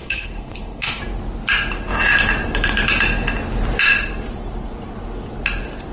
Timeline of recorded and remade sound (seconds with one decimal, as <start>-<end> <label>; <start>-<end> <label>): 0.0-1.0 remade; 1.0-5.9 recorded